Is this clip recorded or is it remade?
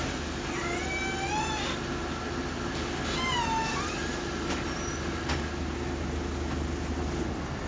recorded